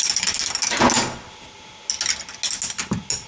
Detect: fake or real real